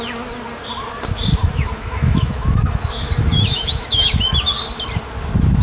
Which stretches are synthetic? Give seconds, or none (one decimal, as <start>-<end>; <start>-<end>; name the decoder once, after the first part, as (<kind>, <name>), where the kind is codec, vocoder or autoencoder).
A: 1.4-4.2 (autoencoder, DAC-VAE)